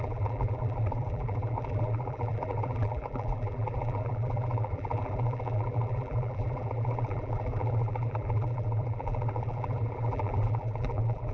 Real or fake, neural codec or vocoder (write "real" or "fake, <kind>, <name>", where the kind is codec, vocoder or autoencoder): fake, vocoder, BigVGAN v2